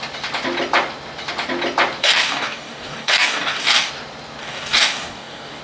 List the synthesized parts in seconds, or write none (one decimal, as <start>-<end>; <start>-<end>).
2.0-3.9; 4.4-5.6